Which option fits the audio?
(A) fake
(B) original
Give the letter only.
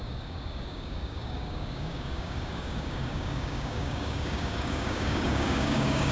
A